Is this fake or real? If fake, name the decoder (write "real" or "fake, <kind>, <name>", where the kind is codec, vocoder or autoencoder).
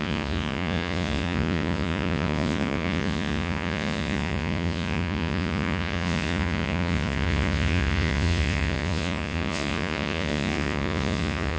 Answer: fake, vocoder, Vocos